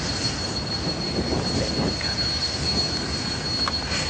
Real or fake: real